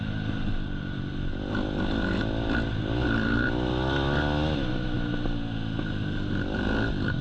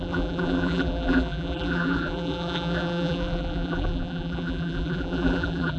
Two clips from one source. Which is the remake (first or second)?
second